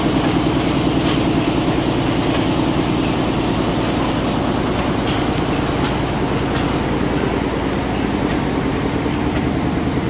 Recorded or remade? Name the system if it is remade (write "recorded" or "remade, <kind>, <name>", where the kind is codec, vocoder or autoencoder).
recorded